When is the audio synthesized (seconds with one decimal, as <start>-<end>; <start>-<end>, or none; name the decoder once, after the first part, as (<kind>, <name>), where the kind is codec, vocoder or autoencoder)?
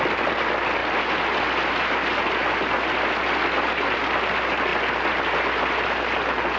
none